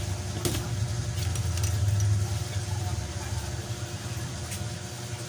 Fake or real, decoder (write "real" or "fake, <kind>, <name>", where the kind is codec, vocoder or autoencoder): real